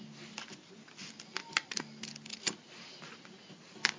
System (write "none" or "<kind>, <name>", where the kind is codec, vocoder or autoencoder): none